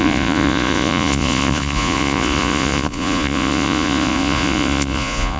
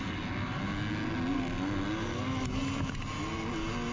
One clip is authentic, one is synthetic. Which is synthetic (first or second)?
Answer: first